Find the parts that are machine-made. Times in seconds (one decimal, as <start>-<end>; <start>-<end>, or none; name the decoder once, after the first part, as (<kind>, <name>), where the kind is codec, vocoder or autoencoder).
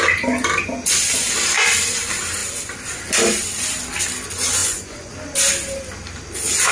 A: 4.6-5.1 (vocoder, Vocos)